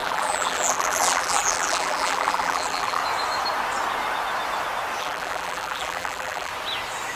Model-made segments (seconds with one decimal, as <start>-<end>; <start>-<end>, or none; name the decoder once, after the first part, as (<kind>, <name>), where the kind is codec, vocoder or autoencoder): 0.0-3.0 (vocoder, BigVGAN v2); 5.0-6.5